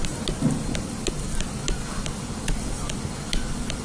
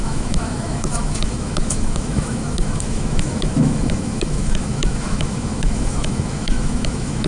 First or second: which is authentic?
first